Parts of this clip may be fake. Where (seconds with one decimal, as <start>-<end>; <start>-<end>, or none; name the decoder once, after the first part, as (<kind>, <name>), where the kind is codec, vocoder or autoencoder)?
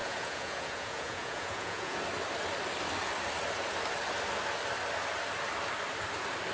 0.0-2.0 (vocoder, Vocos)